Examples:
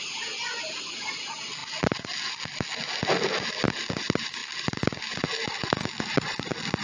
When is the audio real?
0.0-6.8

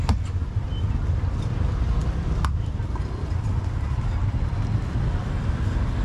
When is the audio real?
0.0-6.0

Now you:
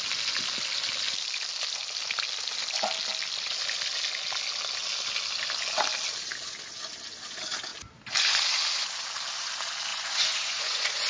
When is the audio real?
0.0-9.9